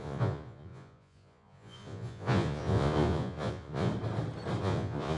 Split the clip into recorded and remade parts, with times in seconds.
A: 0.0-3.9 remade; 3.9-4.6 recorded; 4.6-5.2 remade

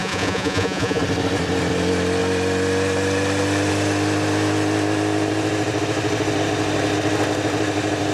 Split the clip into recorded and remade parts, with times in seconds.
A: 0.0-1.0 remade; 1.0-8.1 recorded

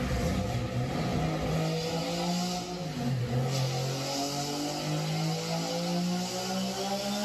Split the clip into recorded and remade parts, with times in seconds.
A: 0.0-7.2 recorded

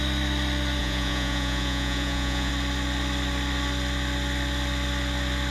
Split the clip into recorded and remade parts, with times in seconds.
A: 0.0-0.8 recorded; 0.8-2.5 remade; 2.5-5.5 recorded

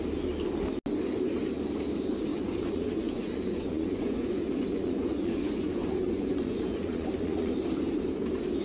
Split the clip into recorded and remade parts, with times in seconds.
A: 0.0-2.3 recorded; 2.3-7.5 remade; 7.5-8.6 recorded

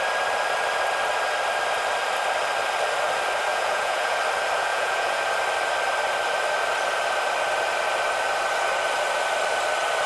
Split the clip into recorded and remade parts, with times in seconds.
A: 0.0-3.5 recorded; 3.5-4.1 remade; 4.1-4.7 recorded; 4.7-5.2 remade; 5.2-10.1 recorded